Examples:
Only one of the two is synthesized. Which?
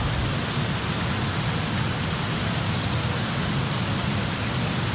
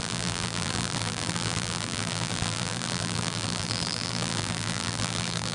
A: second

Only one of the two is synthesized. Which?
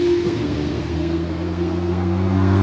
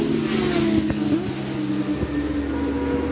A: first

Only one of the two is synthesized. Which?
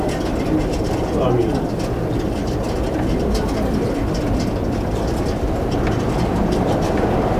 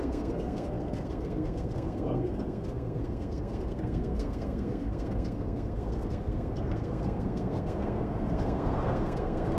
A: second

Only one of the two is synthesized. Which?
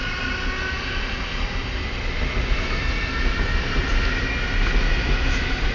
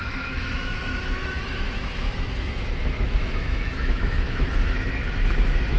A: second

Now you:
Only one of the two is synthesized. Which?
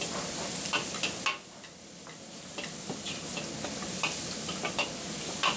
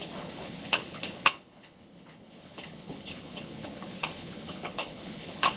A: second